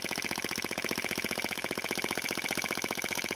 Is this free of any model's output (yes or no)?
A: yes